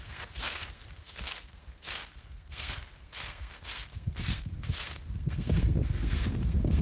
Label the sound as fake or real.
fake